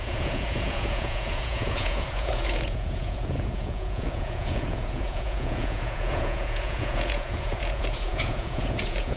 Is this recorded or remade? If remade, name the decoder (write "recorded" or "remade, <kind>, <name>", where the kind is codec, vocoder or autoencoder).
remade, vocoder, Vocos